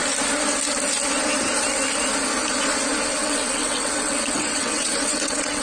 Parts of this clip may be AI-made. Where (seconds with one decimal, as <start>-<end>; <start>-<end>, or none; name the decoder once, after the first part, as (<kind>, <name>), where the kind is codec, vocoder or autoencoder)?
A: 3.2-5.6 (vocoder, WaveNeXt)